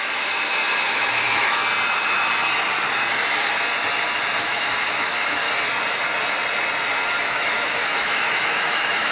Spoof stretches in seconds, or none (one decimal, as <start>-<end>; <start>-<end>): 0.0-1.6; 4.4-5.4; 7.2-9.1